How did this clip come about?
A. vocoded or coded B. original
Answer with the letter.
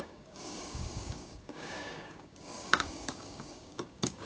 A